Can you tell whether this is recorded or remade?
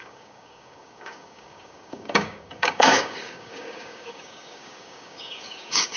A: remade